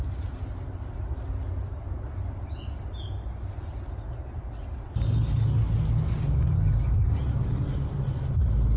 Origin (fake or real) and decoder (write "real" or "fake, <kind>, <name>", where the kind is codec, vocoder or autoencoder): real